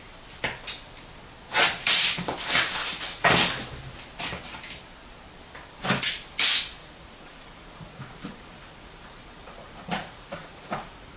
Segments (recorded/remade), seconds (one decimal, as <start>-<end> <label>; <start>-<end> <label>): 0.0-2.8 recorded; 2.8-3.3 remade; 3.3-6.8 recorded; 6.8-11.2 remade